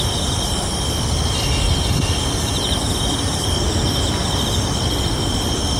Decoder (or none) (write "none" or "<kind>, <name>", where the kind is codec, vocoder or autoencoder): none